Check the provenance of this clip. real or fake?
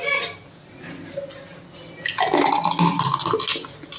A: real